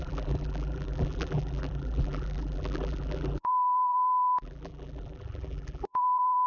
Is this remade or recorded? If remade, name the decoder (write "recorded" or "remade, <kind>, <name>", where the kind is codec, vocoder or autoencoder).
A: remade, vocoder, BigVGAN v2